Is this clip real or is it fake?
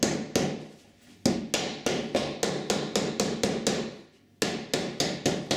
real